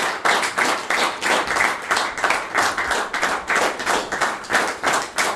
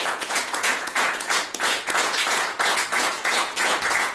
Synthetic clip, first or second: second